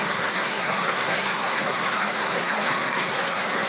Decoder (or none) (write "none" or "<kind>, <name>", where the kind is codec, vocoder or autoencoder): codec, SNAC